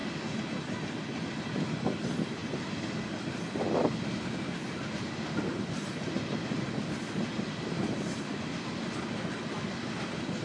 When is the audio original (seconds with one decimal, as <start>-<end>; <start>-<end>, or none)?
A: 0.0-10.4